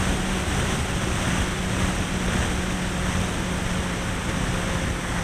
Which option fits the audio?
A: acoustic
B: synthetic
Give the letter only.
A